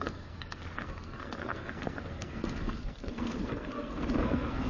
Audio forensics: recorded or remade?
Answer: remade